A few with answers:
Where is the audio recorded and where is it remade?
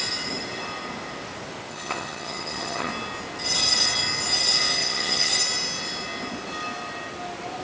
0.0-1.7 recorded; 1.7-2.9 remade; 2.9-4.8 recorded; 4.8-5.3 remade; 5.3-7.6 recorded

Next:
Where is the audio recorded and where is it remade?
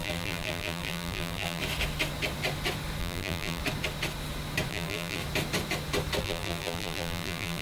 0.0-1.6 remade; 1.6-3.0 recorded; 3.0-3.6 remade; 3.6-4.7 recorded; 4.7-5.2 remade; 5.2-6.2 recorded; 6.2-7.6 remade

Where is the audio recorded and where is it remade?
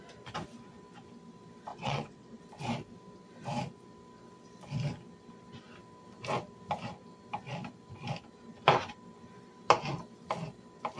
0.0-1.7 recorded; 1.7-2.4 remade; 2.4-11.0 recorded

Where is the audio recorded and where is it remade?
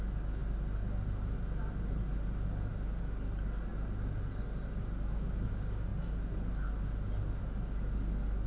0.0-8.5 recorded